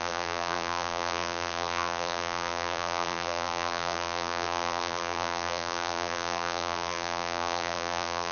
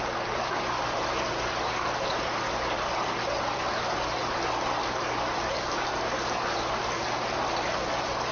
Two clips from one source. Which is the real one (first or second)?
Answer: second